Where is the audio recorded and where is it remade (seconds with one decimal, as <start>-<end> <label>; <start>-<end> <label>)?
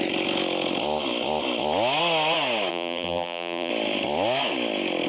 0.0-2.7 recorded; 2.7-3.7 remade; 3.7-5.1 recorded